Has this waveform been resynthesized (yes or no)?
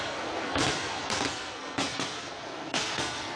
yes